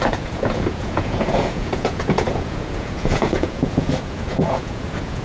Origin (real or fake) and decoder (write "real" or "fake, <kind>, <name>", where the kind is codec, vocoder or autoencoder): fake, vocoder, Vocos